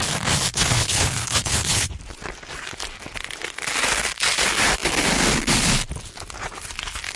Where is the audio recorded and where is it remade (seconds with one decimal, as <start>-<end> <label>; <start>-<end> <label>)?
0.0-0.5 recorded; 0.5-1.9 remade; 1.9-7.2 recorded